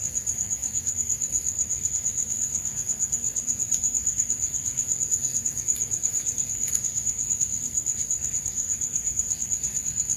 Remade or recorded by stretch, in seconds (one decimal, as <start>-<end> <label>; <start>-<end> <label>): 0.0-10.2 remade